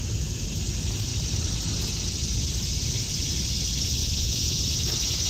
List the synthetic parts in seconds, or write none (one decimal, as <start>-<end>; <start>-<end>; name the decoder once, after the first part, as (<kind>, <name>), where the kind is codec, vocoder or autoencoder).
4.0-4.6 (vocoder, Vocos)